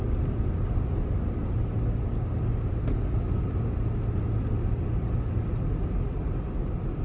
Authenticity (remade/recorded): recorded